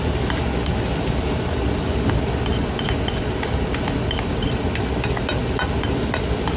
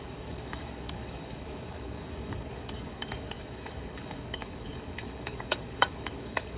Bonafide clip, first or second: first